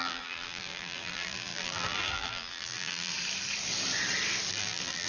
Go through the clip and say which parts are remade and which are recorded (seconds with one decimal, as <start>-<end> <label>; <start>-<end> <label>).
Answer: 0.0-3.1 remade; 3.1-4.5 recorded; 4.5-5.1 remade